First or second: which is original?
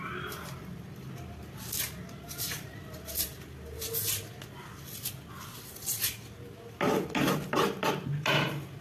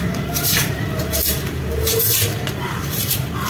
first